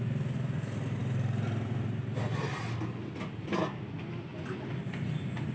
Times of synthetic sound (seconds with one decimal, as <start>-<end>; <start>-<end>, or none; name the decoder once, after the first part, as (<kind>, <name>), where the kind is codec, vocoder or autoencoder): none